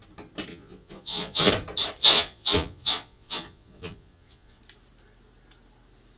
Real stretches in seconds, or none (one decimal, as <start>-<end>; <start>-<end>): 0.0-0.5; 1.5-2.0; 4.6-6.2